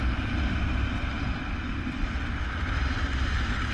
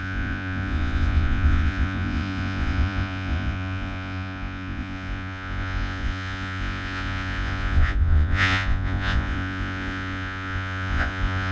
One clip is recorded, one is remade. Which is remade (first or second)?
second